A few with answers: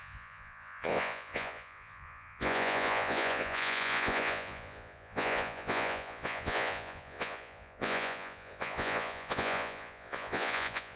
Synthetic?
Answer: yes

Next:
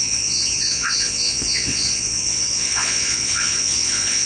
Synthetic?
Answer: yes